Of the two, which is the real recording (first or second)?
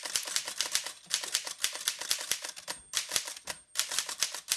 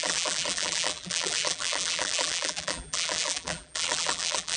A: first